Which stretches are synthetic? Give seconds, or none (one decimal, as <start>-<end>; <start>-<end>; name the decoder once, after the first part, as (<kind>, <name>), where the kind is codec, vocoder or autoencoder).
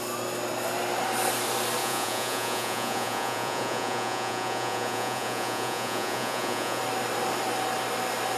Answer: 1.8-6.8 (vocoder, Vocos)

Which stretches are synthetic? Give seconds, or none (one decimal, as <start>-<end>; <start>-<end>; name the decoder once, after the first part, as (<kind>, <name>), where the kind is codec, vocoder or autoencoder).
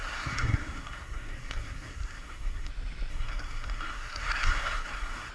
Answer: 0.0-2.7 (codec, SNAC); 3.1-5.3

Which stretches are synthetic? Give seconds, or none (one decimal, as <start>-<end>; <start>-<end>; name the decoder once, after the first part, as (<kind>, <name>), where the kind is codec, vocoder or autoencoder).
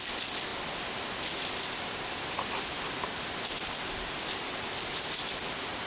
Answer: none